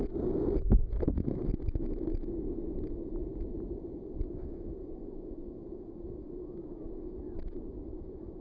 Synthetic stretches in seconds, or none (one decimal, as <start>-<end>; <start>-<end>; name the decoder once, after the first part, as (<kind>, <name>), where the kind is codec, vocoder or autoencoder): 1.3-3.3 (autoencoder, DAC-VAE); 4.0-8.4